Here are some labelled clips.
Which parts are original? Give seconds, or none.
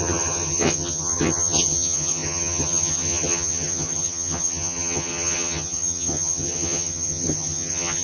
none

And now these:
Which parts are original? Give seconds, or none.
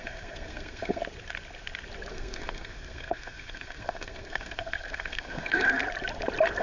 1.0-2.1; 5.8-6.6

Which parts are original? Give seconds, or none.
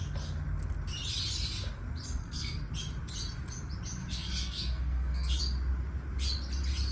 0.0-2.2; 2.7-4.0; 5.4-6.9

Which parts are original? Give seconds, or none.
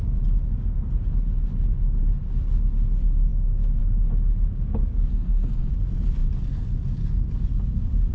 0.0-5.1; 5.7-8.1